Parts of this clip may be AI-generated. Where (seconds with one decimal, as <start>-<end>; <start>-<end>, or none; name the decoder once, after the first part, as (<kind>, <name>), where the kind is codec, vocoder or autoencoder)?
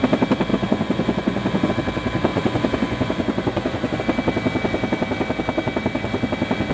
0.5-1.7 (vocoder, Vocos); 2.3-4.0